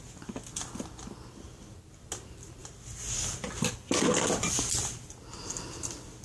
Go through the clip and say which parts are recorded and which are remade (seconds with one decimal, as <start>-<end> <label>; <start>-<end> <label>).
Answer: 0.0-6.2 recorded